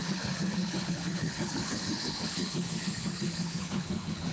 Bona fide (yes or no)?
no